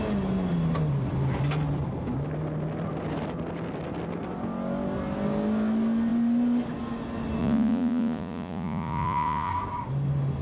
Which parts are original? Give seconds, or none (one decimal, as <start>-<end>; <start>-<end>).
0.0-7.4; 9.5-10.4